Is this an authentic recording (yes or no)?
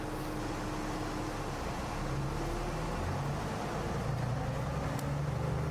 yes